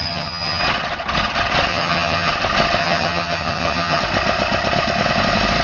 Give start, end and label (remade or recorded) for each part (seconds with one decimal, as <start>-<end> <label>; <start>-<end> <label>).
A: 0.0-0.6 remade; 0.6-1.7 recorded; 1.7-2.3 remade; 2.3-2.8 recorded; 2.8-4.0 remade; 4.0-5.6 recorded